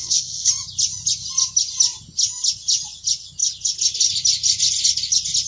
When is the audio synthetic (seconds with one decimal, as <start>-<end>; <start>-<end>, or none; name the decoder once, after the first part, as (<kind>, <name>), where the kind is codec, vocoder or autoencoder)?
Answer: 0.0-0.5 (codec, SNAC)

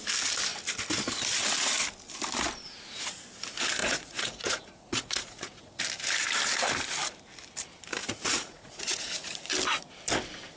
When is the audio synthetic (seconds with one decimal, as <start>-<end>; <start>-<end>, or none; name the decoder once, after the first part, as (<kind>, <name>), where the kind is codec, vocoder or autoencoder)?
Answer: 3.8-5.8 (vocoder, Vocos); 8.0-9.5

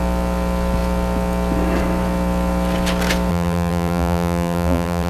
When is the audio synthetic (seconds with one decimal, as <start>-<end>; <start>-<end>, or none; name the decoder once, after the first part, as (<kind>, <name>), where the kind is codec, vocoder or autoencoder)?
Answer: 3.3-5.1 (vocoder, BigVGAN v2)

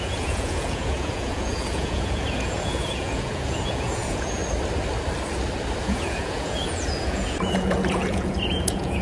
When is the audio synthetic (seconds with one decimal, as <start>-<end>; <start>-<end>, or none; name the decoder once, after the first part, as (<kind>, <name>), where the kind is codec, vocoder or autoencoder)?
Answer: 0.0-4.4 (vocoder, Vocos); 5.8-9.0

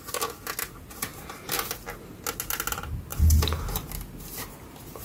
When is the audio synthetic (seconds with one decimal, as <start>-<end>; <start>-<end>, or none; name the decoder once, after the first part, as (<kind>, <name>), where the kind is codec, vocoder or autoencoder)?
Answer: 1.1-1.7 (vocoder, BigVGAN v2); 3.1-3.9

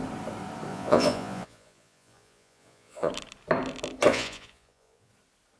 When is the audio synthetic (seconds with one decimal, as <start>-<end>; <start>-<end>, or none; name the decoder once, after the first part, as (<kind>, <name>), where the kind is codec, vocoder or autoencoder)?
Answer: 0.7-3.1 (vocoder, Vocos); 4.1-5.1

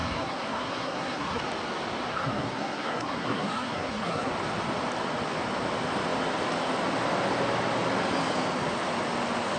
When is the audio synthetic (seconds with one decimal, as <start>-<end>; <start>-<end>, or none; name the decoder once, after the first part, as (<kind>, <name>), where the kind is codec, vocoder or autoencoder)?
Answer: 0.0-1.4 (codec, SNAC); 2.1-4.3